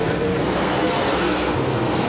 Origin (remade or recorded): remade